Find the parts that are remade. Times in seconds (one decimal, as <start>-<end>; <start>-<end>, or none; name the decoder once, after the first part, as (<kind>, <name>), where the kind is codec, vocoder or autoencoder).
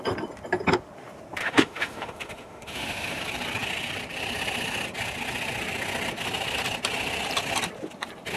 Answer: 1.4-3.2 (autoencoder, DAC-VAE)